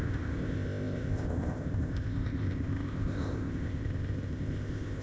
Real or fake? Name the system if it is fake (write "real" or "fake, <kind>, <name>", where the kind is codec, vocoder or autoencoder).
fake, codec, ZipCodec